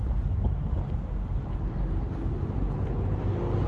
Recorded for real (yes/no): yes